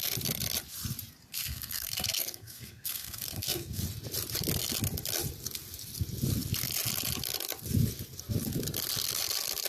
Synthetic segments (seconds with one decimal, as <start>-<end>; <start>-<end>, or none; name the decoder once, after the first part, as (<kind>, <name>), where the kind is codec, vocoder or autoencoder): 1.3-3.8 (codec, SNAC)